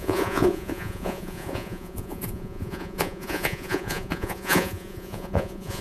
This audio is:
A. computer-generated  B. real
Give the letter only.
A